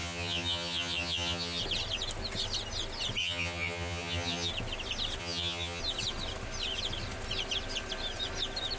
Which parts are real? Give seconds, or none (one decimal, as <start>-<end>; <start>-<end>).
1.6-3.2; 4.5-5.2; 5.8-8.8